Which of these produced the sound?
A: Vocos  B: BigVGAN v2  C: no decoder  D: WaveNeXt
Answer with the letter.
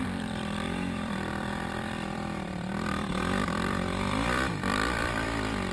B